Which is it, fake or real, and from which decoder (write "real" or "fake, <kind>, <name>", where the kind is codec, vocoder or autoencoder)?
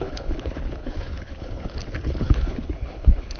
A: fake, codec, HILCodec